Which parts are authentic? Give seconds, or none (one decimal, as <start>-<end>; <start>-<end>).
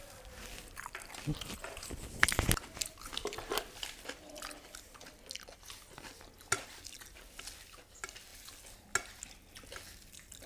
0.0-10.5